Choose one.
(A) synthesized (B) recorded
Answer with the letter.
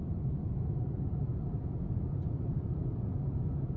A